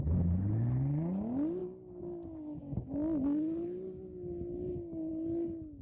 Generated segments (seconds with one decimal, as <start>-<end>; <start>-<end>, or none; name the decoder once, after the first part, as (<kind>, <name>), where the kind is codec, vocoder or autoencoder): none